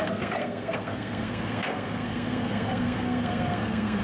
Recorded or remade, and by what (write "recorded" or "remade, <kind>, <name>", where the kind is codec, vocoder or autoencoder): remade, codec, SNAC